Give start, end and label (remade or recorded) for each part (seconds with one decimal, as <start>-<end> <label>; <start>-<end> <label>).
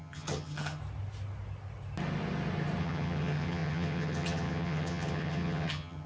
0.0-0.8 remade; 0.8-2.8 recorded; 2.8-6.1 remade